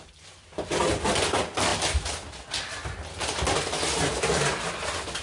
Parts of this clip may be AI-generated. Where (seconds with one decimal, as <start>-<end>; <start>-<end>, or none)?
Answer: none